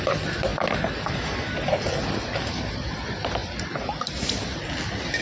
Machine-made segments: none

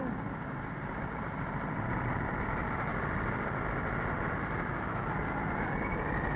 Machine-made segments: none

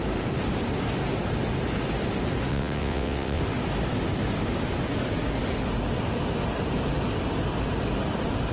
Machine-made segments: 2.5-3.4 (vocoder, WaveNeXt)